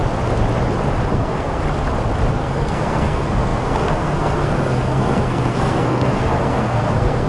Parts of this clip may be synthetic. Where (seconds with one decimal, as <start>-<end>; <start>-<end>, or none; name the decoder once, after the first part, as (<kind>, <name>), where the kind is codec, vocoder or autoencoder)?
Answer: 1.1-1.6 (codec, SNAC); 2.3-7.3